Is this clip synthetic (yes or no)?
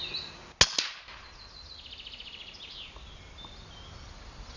no